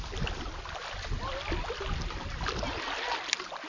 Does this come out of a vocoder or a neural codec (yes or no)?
no